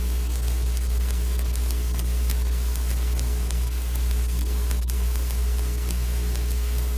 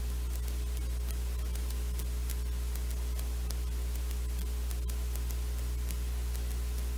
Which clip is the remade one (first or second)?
first